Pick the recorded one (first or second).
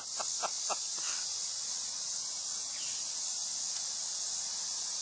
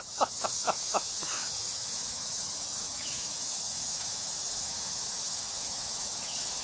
first